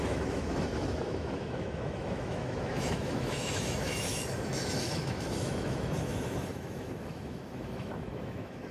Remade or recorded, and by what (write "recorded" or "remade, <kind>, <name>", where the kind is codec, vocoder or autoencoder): remade, autoencoder, DAC-VAE